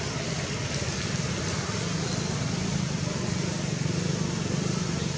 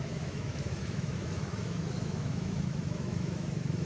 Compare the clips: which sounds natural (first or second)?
first